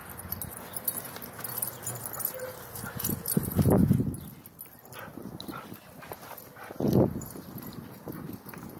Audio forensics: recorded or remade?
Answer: recorded